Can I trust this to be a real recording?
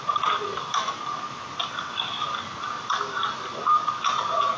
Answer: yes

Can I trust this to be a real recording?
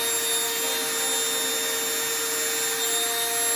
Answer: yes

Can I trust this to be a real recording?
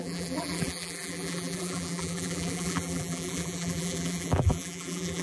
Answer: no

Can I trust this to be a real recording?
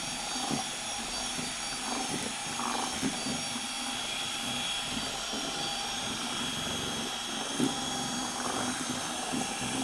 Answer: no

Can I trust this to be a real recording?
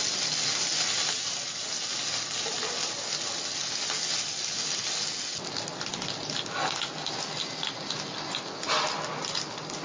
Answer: yes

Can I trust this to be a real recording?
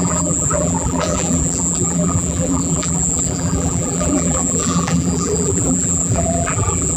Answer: no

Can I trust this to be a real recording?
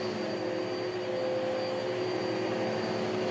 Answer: yes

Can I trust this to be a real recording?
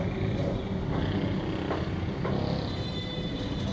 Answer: yes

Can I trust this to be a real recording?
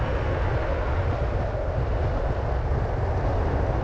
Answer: yes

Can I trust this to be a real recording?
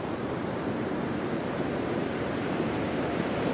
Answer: no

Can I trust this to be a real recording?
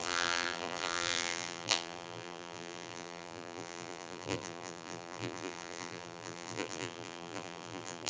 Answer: no